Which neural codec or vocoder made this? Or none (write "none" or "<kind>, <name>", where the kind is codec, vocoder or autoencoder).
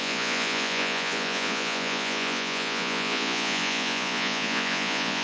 vocoder, Vocos